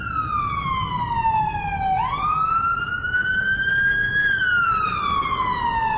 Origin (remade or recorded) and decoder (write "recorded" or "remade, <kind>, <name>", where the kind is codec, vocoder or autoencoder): recorded